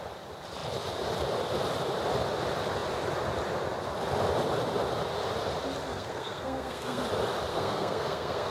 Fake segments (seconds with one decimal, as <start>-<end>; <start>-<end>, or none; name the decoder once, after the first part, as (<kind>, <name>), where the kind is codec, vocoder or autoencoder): 5.9-7.0 (codec, SNAC); 7.5-8.5